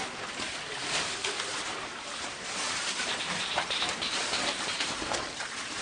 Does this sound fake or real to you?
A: fake